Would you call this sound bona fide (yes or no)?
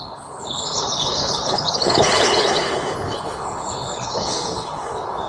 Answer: no